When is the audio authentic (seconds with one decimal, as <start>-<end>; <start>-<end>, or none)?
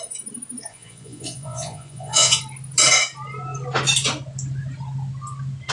0.0-0.7; 2.4-5.7